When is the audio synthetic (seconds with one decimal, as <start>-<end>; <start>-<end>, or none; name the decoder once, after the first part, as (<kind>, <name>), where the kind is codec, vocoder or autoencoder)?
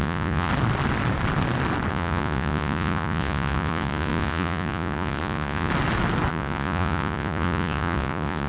0.0-0.5 (vocoder, Vocos); 1.9-5.7; 6.3-8.5